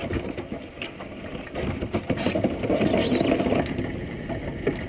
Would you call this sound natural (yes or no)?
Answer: yes